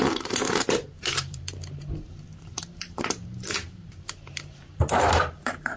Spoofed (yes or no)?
yes